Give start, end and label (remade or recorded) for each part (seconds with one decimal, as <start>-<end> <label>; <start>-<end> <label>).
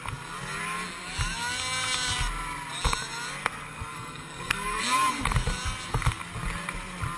0.0-3.4 recorded; 3.4-4.8 remade; 4.8-7.2 recorded